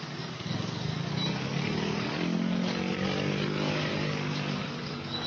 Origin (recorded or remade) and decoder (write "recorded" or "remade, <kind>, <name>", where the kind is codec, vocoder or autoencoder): remade, codec, DAC